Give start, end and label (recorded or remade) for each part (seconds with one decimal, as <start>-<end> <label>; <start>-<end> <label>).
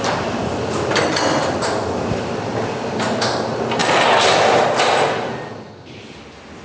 0.0-6.6 recorded